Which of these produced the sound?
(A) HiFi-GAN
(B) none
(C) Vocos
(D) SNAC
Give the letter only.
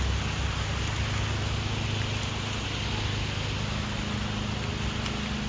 B